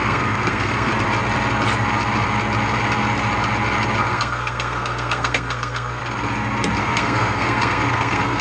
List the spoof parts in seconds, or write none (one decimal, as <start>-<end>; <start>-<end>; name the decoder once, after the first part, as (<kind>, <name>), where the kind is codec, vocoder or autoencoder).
0.0-0.9 (codec, SNAC); 4.0-6.0; 6.8-8.4